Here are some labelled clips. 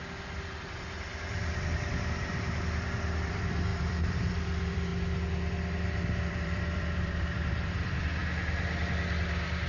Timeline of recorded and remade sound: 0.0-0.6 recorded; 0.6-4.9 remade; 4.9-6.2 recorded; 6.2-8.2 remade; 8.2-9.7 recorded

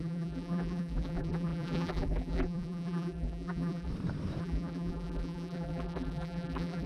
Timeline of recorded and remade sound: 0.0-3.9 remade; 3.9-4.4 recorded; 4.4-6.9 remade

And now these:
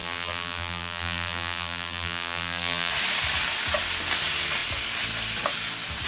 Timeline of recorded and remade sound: 0.0-2.9 remade; 2.9-6.1 recorded

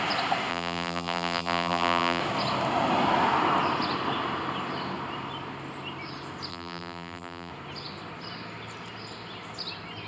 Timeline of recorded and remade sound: 0.0-0.5 recorded; 0.5-2.2 remade; 2.2-6.5 recorded; 6.5-7.5 remade; 7.5-10.1 recorded

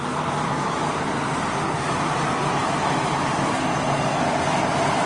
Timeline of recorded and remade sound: 0.0-2.6 recorded; 2.6-3.5 remade; 3.5-5.1 recorded